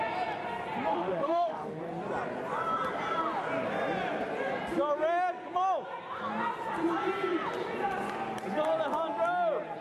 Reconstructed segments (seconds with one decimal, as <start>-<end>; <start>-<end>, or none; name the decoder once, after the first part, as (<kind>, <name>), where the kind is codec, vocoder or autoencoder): 0.9-1.8 (autoencoder, DAC-VAE)